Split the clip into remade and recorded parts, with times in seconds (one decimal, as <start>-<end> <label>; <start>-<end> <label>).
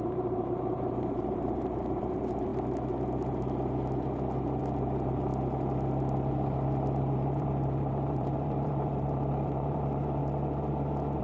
0.0-2.5 remade; 2.5-4.6 recorded; 4.6-5.3 remade; 5.3-7.0 recorded; 7.0-10.2 remade; 10.2-11.2 recorded